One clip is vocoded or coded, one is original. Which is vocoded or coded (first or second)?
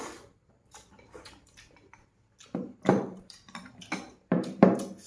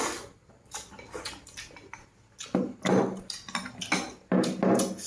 first